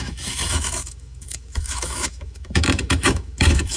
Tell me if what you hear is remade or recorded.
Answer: remade